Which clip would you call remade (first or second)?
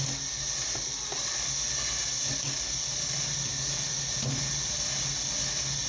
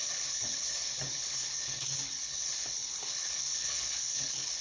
second